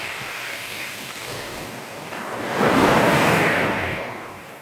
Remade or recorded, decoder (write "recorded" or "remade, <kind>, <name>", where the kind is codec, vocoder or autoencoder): remade, codec, DAC